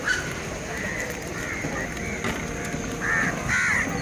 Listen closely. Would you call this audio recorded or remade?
recorded